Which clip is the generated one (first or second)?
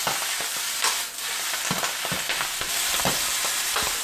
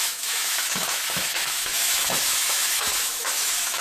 second